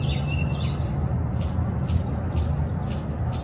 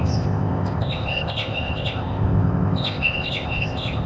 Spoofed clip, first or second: second